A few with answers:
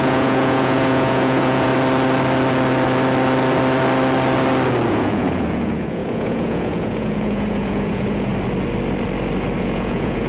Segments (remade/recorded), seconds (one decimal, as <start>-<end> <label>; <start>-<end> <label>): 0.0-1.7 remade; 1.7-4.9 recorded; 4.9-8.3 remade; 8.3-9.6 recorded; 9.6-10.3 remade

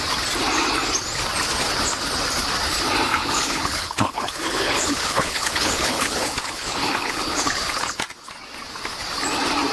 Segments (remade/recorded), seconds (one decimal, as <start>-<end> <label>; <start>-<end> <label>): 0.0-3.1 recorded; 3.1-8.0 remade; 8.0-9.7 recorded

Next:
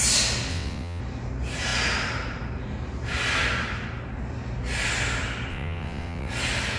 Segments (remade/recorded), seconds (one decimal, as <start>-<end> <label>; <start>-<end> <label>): 0.0-0.5 recorded; 0.5-1.0 remade; 1.0-5.5 recorded; 5.5-6.3 remade; 6.3-6.8 recorded

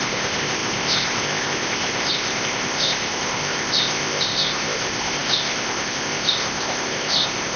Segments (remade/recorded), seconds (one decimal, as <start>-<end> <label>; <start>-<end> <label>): 0.0-7.6 remade